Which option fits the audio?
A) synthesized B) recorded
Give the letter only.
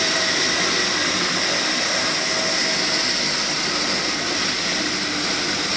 B